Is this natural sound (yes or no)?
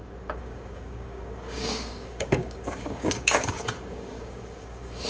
no